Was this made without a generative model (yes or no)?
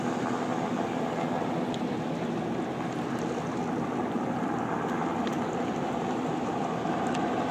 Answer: yes